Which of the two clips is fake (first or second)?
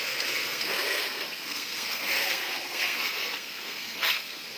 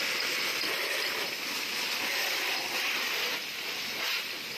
first